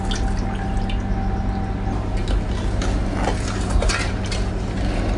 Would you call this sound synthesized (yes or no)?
no